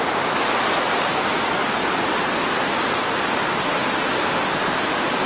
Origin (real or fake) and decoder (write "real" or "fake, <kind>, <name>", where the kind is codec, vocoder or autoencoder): real